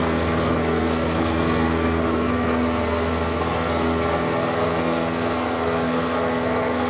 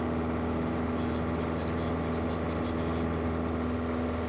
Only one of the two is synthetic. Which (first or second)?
first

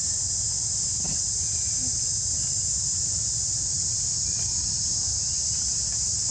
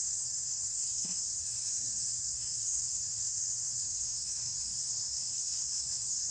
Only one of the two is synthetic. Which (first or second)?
second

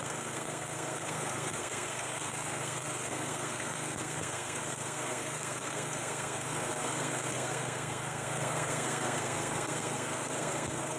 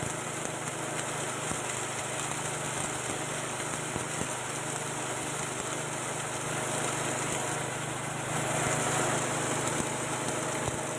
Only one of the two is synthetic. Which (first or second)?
first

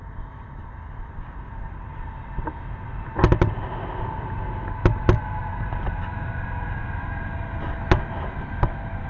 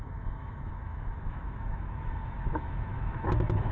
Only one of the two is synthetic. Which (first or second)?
second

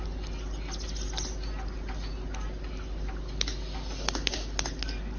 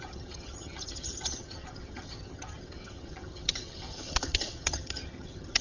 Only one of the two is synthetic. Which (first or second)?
second